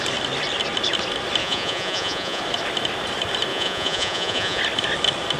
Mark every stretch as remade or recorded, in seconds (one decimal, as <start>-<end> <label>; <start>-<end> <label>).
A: 0.0-1.4 recorded; 1.4-2.4 remade; 2.4-3.5 recorded; 3.5-4.6 remade; 4.6-5.4 recorded